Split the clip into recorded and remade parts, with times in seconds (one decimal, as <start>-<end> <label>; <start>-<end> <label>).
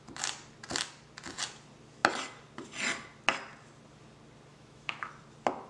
0.0-4.5 recorded; 4.5-5.1 remade; 5.1-5.7 recorded